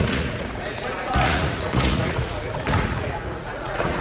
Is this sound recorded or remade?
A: remade